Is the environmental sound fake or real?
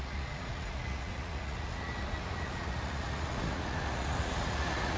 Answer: fake